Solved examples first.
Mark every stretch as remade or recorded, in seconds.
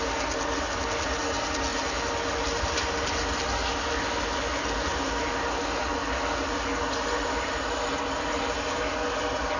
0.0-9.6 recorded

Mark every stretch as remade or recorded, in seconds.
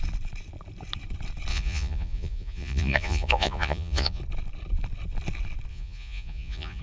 0.0-1.5 recorded; 1.5-4.2 remade; 4.2-5.7 recorded; 5.7-6.8 remade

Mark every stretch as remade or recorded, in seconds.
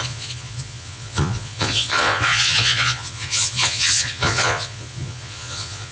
0.0-5.9 remade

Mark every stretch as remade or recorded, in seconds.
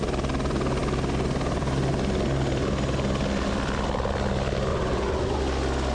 0.0-4.7 recorded; 4.7-5.4 remade; 5.4-5.9 recorded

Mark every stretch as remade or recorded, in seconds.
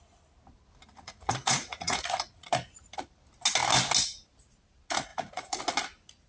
0.0-0.9 recorded; 0.9-3.0 remade; 3.0-5.1 recorded; 5.1-5.6 remade; 5.6-6.3 recorded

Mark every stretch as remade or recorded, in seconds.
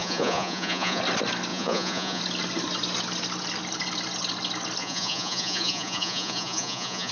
0.0-1.0 remade; 1.0-1.5 recorded; 1.5-2.2 remade; 2.2-4.8 recorded; 4.8-7.1 remade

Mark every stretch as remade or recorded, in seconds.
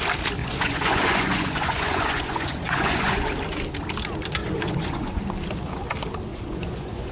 0.0-0.4 recorded; 0.4-3.3 remade; 3.3-4.4 recorded; 4.4-5.2 remade; 5.2-6.3 recorded; 6.3-7.1 remade